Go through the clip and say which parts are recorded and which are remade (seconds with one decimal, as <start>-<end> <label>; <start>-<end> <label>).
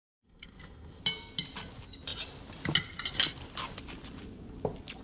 0.0-1.0 remade; 1.0-5.0 recorded